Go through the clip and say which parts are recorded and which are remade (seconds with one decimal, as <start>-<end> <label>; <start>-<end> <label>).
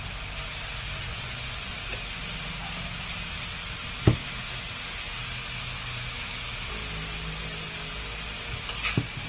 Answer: 0.0-1.1 recorded; 1.1-1.7 remade; 1.7-9.3 recorded